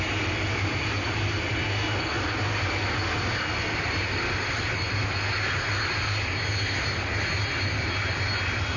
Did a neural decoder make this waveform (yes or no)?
no